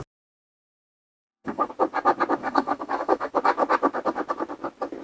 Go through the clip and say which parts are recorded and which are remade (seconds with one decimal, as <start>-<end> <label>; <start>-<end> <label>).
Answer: 0.0-1.1 recorded; 1.1-1.7 remade; 1.7-2.4 recorded; 2.4-3.3 remade; 3.3-5.0 recorded